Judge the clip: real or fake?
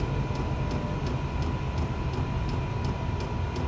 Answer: real